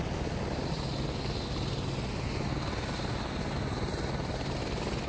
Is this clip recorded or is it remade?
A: recorded